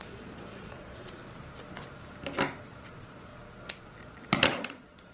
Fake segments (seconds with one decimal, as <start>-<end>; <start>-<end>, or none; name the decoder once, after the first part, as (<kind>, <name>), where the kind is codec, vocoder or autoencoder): 0.0-1.2 (vocoder, Vocos); 2.9-3.3; 3.8-5.1